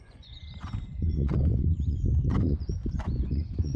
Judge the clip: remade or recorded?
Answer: remade